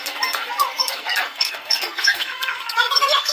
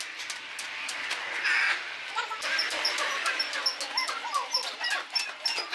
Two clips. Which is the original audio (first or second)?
second